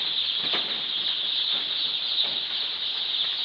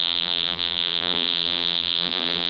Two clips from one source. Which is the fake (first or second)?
second